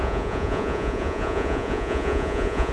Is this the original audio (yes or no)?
no